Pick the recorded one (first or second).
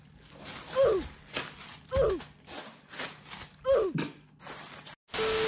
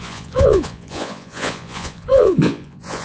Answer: first